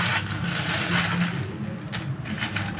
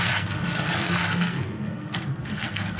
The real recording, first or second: first